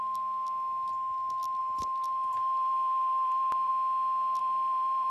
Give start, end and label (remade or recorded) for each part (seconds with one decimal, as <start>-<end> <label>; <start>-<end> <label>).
0.0-1.6 recorded; 1.6-3.7 remade; 3.7-4.4 recorded; 4.4-5.1 remade